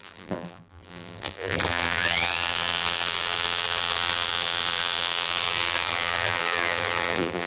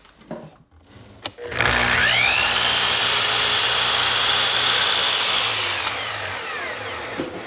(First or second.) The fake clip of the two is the first